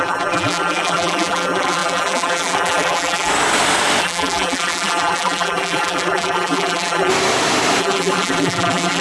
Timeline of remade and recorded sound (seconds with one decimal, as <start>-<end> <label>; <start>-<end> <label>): 0.0-3.3 remade; 3.3-4.0 recorded; 4.0-7.1 remade; 7.1-7.8 recorded; 7.8-9.0 remade